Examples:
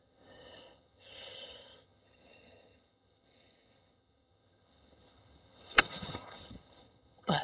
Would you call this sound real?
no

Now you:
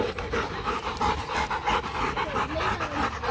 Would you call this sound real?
yes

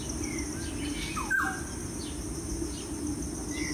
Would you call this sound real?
yes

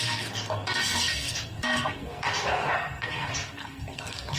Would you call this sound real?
no